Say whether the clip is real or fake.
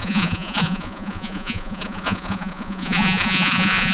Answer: fake